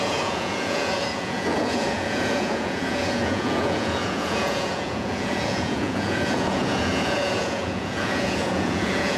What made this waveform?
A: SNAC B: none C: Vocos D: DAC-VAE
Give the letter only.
C